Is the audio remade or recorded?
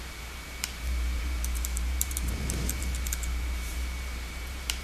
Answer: remade